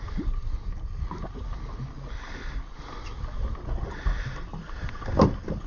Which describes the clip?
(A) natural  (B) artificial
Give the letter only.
A